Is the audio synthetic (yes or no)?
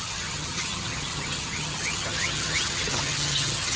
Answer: yes